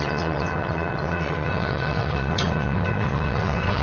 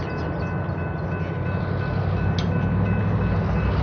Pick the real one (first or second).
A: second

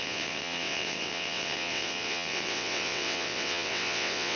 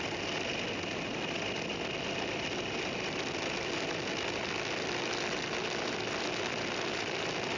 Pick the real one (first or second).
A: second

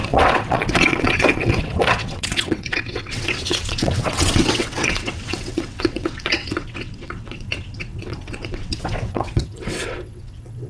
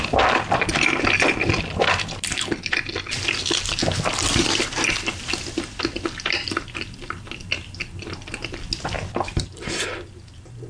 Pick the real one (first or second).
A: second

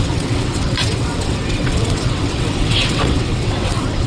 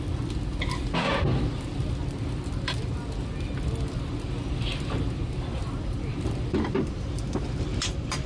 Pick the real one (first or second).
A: second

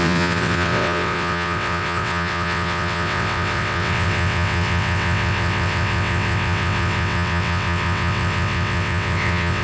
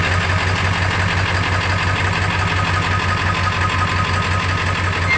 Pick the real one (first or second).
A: second